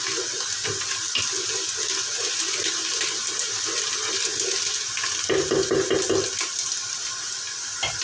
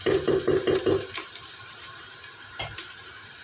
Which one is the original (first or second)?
first